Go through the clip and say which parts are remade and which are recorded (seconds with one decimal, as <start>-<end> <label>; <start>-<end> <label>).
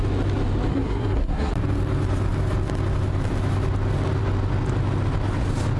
0.0-0.7 recorded; 0.7-1.5 remade; 1.5-5.8 recorded